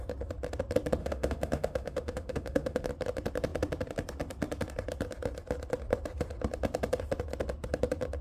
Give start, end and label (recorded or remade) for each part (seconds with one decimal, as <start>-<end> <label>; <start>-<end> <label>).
0.0-1.0 recorded; 1.0-2.9 remade; 2.9-8.2 recorded